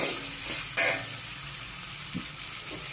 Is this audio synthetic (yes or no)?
no